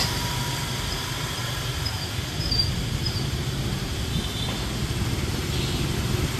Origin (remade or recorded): recorded